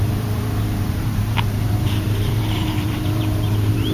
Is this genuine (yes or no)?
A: no